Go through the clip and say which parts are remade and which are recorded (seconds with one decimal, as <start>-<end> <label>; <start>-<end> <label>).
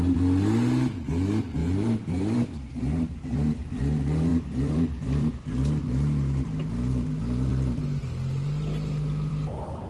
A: 0.0-1.6 recorded; 1.6-3.8 remade; 3.8-4.3 recorded; 4.3-5.3 remade; 5.3-9.9 recorded